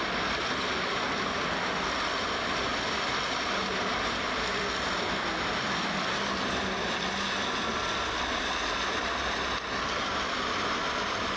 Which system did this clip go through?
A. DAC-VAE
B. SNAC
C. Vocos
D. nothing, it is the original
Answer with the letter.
D